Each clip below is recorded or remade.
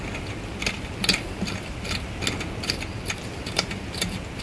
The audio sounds recorded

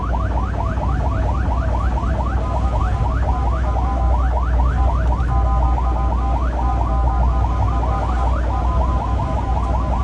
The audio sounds recorded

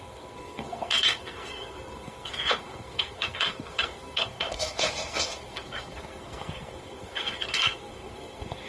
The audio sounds remade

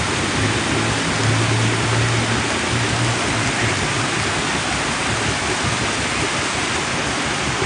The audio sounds recorded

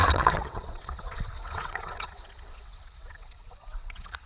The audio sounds remade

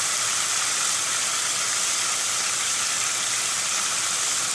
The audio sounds recorded